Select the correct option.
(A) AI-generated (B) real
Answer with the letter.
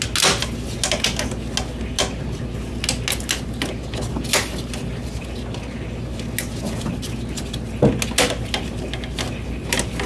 B